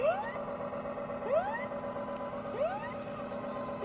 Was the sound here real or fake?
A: real